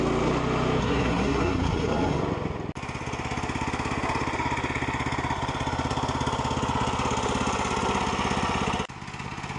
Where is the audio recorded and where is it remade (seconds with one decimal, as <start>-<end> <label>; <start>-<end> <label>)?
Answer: 0.0-0.8 recorded; 0.8-2.2 remade; 2.2-9.6 recorded